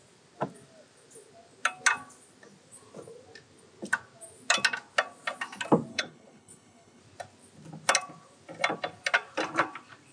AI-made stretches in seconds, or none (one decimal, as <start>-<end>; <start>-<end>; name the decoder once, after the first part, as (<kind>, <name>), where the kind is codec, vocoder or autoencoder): 5.9-7.0 (codec, HILCodec)